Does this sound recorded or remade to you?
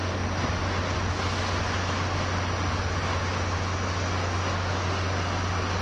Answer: recorded